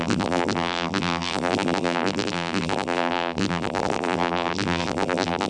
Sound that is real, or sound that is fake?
fake